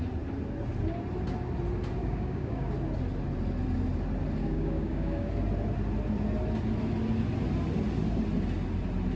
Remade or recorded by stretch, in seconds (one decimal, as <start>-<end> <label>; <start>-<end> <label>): 0.0-2.0 recorded; 2.0-2.7 remade; 2.7-4.4 recorded; 4.4-5.3 remade; 5.3-9.2 recorded